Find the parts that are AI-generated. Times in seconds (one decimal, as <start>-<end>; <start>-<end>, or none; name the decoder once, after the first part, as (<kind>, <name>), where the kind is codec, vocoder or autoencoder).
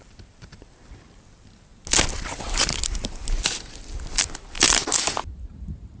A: none